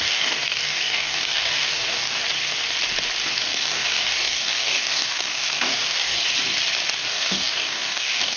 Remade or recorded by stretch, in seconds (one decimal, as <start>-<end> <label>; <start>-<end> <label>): 0.0-2.2 remade; 2.2-3.3 recorded; 3.3-6.2 remade; 6.2-7.0 recorded; 7.0-8.4 remade